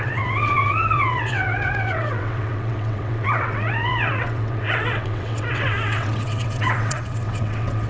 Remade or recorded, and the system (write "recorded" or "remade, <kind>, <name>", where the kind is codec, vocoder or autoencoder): remade, vocoder, WaveNeXt